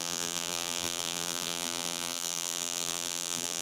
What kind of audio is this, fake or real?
fake